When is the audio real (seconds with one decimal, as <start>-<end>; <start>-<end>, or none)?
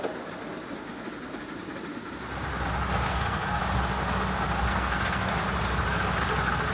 0.0-3.1; 3.6-4.7; 5.3-6.7